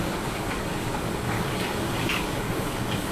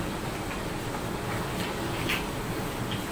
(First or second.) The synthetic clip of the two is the first